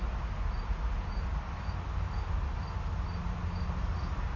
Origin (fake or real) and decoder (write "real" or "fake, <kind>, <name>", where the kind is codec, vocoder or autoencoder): real